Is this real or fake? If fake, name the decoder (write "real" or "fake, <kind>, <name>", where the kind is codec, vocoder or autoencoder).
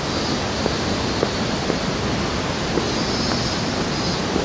real